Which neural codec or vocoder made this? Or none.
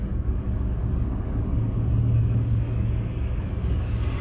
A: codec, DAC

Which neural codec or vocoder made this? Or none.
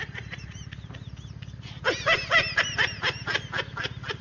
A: none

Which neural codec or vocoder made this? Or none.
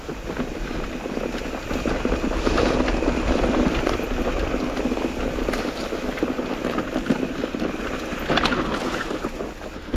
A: none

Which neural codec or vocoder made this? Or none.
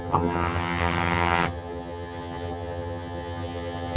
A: vocoder, HiFi-GAN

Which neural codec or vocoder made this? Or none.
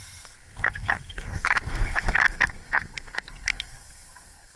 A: codec, SNAC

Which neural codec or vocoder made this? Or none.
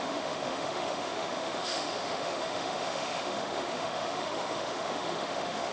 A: autoencoder, DAC-VAE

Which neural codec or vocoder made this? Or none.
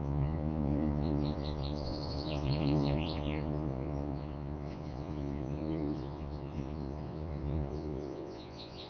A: vocoder, Vocos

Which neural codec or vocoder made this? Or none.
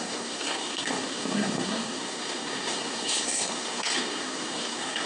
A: codec, SNAC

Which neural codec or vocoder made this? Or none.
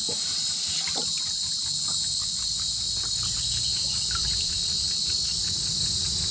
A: none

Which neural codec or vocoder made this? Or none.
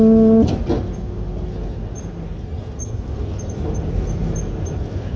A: none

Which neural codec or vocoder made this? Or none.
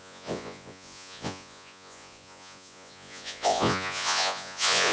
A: vocoder, Vocos